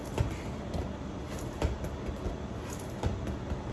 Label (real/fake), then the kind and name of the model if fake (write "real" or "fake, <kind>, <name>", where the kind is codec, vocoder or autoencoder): real